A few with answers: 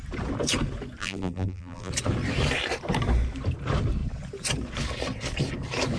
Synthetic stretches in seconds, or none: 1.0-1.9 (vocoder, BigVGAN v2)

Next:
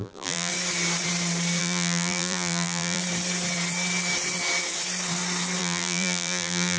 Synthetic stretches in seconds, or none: 0.0-0.5 (vocoder, BigVGAN v2); 1.6-3.0; 5.6-6.8

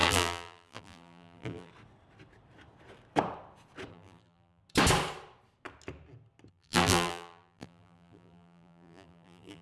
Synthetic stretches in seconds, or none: 0.0-1.7 (vocoder, BigVGAN v2); 3.9-4.6; 6.5-9.6

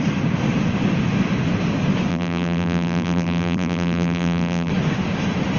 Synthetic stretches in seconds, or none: 2.1-4.7 (vocoder, BigVGAN v2)

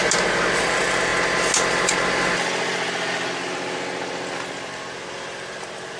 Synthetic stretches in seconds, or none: 0.5-1.1 (vocoder, BigVGAN v2); 4.7-6.0

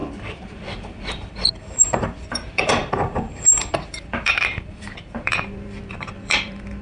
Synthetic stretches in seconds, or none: 0.0-6.8 (vocoder, BigVGAN v2)

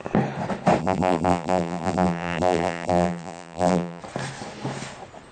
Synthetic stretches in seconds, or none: 0.8-4.0 (vocoder, BigVGAN v2)